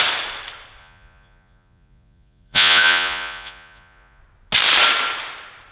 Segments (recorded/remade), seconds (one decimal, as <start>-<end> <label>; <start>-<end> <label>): 0.0-0.8 recorded; 0.8-4.2 remade; 4.2-5.7 recorded